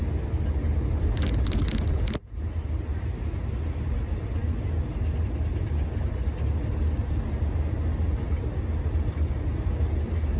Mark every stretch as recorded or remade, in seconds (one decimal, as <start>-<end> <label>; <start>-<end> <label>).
0.0-10.4 recorded